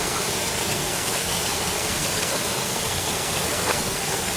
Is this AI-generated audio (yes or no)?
yes